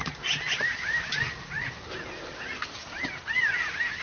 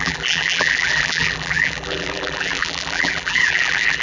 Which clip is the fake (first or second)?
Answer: second